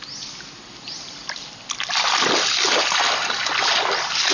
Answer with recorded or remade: recorded